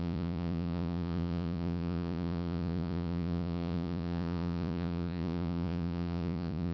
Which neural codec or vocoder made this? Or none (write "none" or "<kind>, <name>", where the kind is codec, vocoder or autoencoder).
vocoder, Vocos